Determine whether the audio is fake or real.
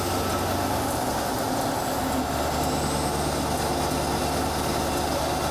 real